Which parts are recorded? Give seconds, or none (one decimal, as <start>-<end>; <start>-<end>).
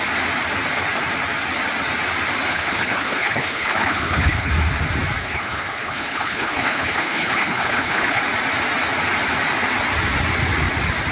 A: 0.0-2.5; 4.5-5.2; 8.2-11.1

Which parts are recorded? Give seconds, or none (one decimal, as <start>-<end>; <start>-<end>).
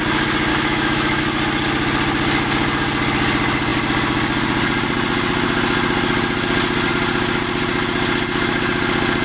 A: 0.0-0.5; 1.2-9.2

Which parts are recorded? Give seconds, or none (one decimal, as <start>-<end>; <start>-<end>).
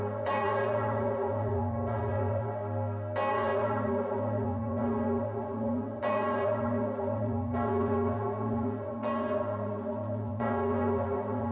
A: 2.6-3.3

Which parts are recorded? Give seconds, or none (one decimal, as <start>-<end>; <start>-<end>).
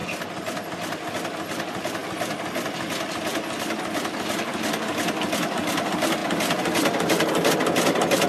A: 0.0-8.3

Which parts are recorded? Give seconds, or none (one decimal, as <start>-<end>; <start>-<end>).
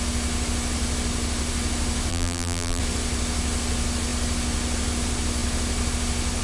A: 0.0-2.1; 2.8-6.4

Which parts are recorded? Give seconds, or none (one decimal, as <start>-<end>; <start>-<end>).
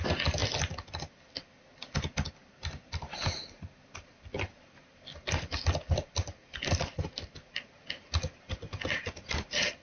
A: 0.0-9.8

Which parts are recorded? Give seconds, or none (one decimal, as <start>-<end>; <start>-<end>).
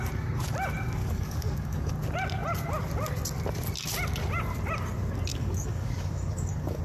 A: 0.0-1.0; 1.9-5.3